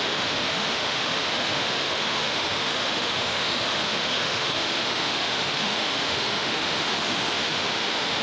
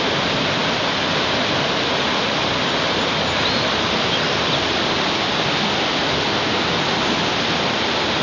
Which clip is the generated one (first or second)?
first